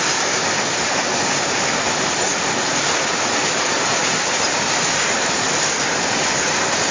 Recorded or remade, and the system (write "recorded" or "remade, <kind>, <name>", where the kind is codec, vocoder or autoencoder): recorded